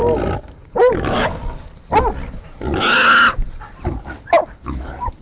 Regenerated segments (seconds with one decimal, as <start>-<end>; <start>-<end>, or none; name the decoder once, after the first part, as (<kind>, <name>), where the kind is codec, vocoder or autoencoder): 0.9-1.4 (codec, DAC); 4.5-5.2

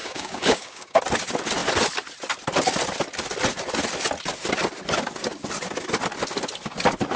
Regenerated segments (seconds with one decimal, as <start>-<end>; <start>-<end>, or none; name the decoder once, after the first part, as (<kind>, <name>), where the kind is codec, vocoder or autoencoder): 0.0-1.0 (codec, DAC)

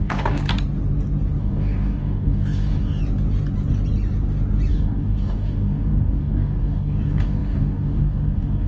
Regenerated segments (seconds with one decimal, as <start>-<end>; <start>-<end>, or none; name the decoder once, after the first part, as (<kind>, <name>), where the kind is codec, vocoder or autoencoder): 0.0-0.4 (codec, DAC); 1.4-3.0; 4.7-8.7

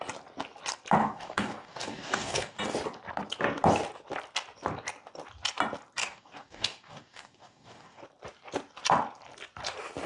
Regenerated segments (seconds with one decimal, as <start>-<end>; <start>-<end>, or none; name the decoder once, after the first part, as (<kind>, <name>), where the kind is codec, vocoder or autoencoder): 1.0-2.6 (codec, DAC); 6.0-8.0